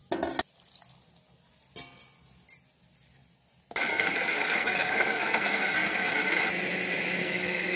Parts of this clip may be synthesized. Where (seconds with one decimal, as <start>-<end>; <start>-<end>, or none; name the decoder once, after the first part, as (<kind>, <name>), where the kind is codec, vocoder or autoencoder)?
3.9-6.4 (codec, SNAC); 7.2-7.8